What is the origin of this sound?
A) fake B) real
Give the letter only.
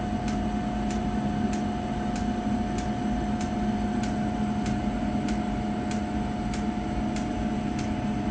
B